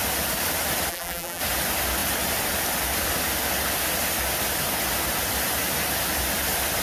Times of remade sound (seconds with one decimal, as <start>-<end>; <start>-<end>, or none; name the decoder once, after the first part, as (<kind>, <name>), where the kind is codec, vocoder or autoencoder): 0.9-1.4 (vocoder, BigVGAN v2)